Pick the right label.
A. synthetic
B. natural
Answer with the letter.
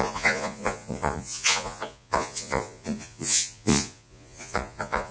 A